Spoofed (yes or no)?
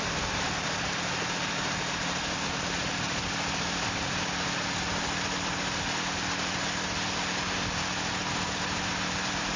no